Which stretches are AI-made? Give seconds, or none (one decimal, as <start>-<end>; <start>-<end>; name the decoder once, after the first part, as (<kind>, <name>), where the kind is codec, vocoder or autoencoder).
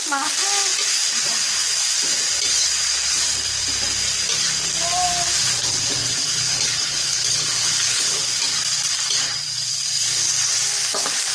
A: 6.0-8.2 (codec, HILCodec); 9.7-10.3